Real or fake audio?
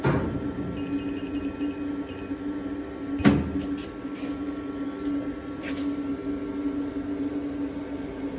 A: real